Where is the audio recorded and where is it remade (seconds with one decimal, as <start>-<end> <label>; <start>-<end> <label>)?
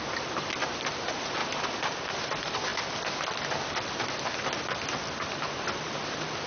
0.0-1.4 recorded; 1.4-2.1 remade; 2.1-6.5 recorded